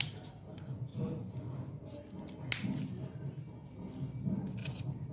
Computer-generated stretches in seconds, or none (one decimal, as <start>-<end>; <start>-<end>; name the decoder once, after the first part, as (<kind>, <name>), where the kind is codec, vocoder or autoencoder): none